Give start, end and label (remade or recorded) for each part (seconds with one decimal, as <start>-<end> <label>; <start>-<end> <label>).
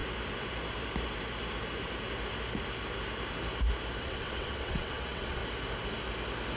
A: 0.0-4.0 recorded; 4.0-5.4 remade; 5.4-6.6 recorded